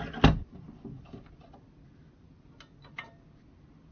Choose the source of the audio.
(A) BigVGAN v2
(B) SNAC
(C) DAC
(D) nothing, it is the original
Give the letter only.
D